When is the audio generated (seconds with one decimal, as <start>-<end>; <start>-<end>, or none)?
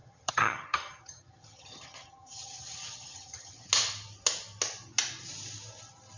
0.0-3.7